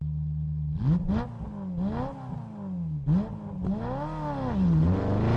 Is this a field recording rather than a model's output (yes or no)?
yes